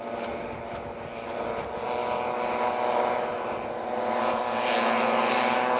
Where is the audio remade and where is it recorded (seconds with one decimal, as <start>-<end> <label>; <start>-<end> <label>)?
0.0-5.8 recorded

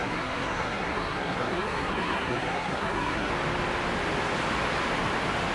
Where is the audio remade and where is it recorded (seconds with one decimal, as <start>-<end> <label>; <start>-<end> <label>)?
0.0-3.3 remade; 3.3-5.5 recorded

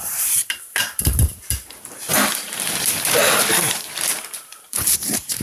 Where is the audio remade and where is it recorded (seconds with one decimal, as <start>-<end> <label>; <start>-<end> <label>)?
0.0-5.4 remade

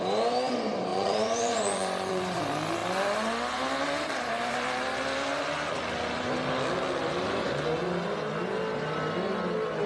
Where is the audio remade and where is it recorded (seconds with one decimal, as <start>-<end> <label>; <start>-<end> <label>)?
0.0-0.9 recorded; 0.9-2.4 remade; 2.4-9.9 recorded

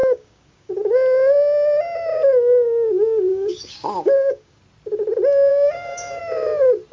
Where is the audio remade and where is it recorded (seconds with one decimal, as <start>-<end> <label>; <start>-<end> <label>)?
0.0-0.7 remade; 0.7-3.3 recorded; 3.3-4.6 remade; 4.6-5.5 recorded; 5.5-6.2 remade; 6.2-6.9 recorded